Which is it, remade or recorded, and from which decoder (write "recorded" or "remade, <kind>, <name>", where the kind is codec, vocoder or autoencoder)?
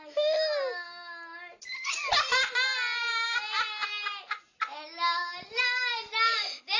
recorded